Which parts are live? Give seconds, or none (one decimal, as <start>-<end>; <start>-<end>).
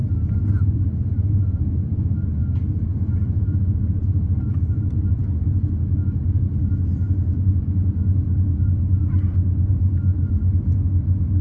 5.2-9.7